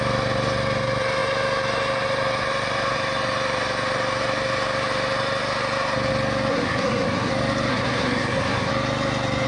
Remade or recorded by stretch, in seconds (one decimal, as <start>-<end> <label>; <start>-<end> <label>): 0.0-6.5 recorded; 6.5-7.3 remade; 7.3-7.7 recorded; 7.7-8.7 remade; 8.7-9.5 recorded